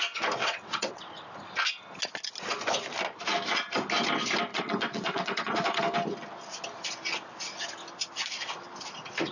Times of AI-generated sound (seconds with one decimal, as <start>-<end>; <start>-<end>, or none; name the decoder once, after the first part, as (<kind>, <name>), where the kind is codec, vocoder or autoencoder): 0.4-1.0 (vocoder, WaveNeXt); 4.5-5.8